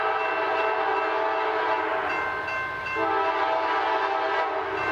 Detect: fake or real real